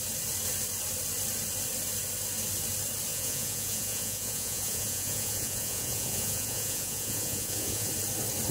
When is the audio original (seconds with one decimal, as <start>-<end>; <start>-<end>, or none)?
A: 0.0-3.1; 7.9-8.5